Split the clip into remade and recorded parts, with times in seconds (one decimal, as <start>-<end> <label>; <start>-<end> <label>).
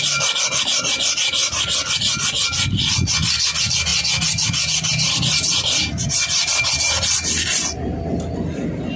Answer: 0.0-9.0 recorded